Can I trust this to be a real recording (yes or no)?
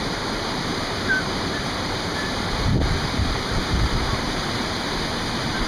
no